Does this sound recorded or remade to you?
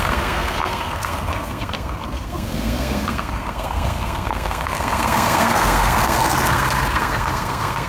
remade